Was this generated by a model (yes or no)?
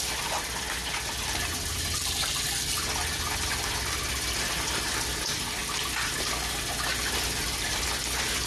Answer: no